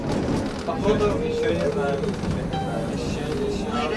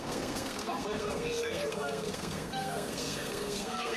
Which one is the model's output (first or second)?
second